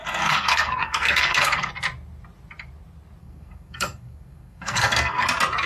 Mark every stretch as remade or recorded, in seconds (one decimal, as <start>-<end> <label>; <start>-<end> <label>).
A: 0.0-1.7 remade; 1.7-3.2 recorded; 3.2-5.2 remade; 5.2-5.7 recorded